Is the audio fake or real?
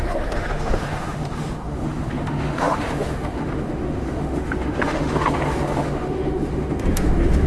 fake